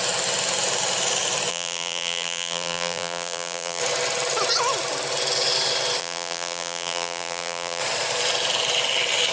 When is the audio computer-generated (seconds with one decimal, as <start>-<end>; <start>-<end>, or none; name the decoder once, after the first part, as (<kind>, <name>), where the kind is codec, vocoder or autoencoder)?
1.5-3.8 (vocoder, BigVGAN v2); 6.0-7.8